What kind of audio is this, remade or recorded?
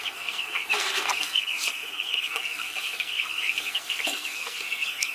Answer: remade